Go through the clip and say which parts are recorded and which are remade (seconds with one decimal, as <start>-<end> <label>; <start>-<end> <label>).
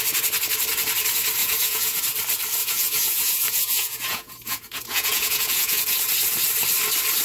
0.0-1.4 recorded; 1.4-2.0 remade; 2.0-2.6 recorded; 2.6-5.8 remade; 5.8-7.2 recorded